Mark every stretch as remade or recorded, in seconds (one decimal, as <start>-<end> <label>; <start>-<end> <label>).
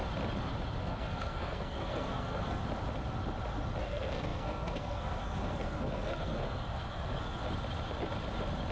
0.0-0.8 recorded; 0.8-2.6 remade; 2.6-3.8 recorded; 3.8-7.4 remade; 7.4-8.7 recorded